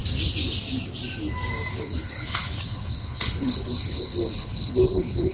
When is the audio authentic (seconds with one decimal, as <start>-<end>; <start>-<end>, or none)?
0.0-1.7